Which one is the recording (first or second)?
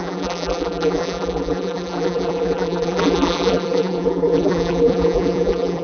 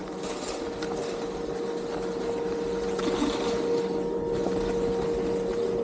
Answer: second